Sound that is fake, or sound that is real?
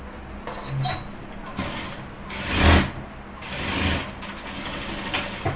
real